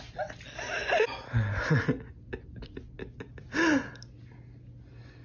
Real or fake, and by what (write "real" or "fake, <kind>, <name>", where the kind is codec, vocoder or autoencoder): real